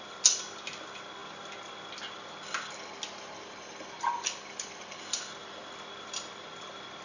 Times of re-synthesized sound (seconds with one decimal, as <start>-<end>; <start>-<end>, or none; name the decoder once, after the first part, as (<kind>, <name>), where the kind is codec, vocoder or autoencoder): none